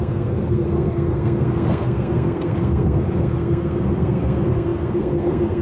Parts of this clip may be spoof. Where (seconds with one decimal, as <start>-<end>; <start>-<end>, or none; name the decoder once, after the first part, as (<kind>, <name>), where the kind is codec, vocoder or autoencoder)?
0.0-5.6 (codec, SNAC)